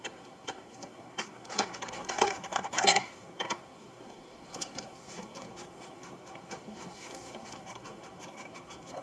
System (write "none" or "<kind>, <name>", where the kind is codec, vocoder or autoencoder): codec, SNAC